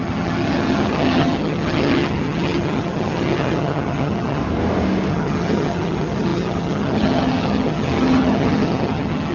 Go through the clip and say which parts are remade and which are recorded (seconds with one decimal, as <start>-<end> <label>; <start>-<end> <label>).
0.0-4.4 remade; 4.4-5.1 recorded; 5.1-9.3 remade